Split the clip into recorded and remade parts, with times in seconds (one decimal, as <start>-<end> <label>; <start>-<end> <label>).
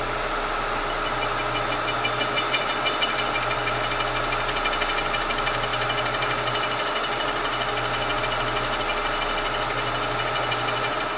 0.0-11.2 recorded